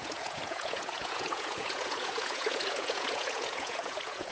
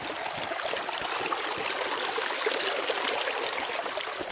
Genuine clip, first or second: second